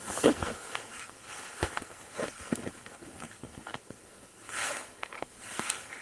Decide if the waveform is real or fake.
fake